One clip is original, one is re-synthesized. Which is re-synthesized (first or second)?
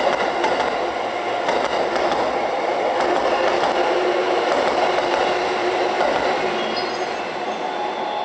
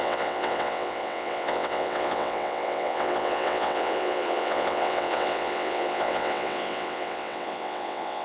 second